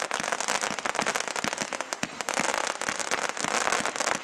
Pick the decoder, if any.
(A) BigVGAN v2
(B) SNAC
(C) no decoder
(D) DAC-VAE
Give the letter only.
C